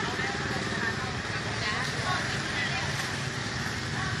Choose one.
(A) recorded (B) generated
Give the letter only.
A